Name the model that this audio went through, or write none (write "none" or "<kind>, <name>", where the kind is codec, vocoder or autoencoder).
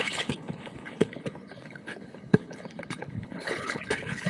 codec, HILCodec